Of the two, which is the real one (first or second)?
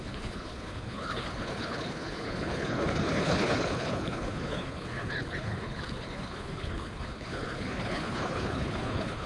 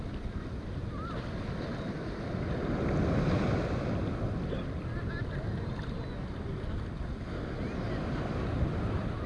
second